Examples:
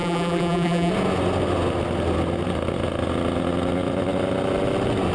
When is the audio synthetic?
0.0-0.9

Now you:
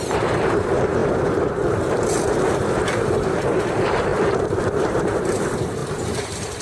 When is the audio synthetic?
0.0-4.1; 4.8-5.8

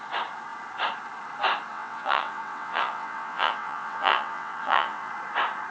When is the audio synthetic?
1.7-5.1